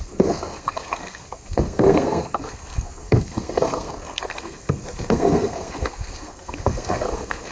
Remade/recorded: remade